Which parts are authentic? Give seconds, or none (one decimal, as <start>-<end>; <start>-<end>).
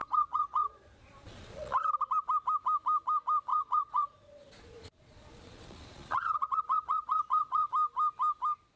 1.8-3.5; 7.7-8.8